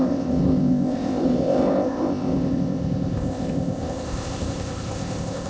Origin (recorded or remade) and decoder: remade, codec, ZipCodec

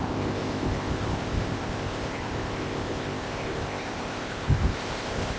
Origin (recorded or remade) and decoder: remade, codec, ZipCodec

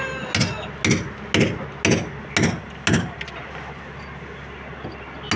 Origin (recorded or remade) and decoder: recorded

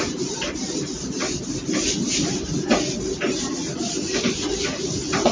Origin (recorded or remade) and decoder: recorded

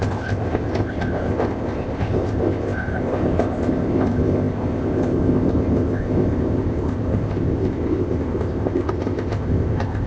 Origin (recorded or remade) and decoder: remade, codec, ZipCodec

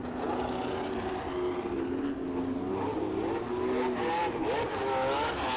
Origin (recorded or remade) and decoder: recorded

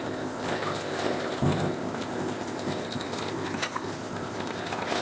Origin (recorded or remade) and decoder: remade, codec, ZipCodec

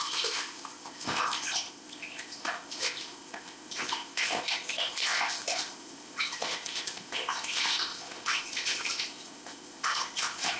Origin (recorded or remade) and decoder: remade, codec, ZipCodec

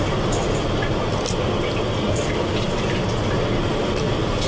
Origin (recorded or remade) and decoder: recorded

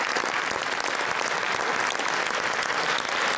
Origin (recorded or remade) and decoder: recorded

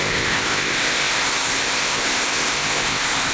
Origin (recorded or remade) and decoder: remade, codec, ZipCodec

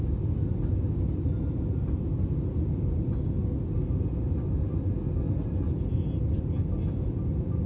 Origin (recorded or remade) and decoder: recorded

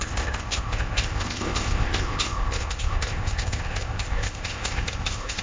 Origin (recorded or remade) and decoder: remade, codec, ZipCodec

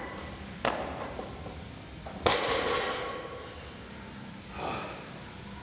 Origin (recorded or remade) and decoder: recorded